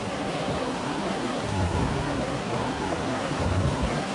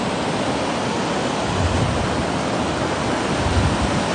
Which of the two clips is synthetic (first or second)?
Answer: first